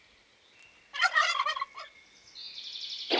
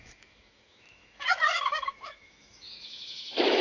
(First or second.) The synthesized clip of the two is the second